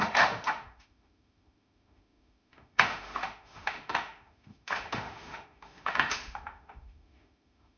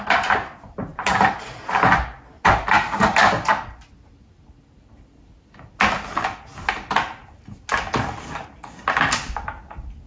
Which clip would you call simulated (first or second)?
first